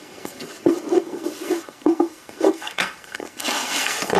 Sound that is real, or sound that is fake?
fake